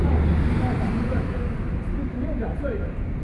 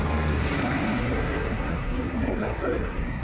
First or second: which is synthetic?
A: second